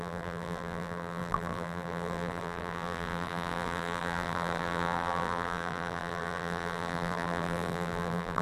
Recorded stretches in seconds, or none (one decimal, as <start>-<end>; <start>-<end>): none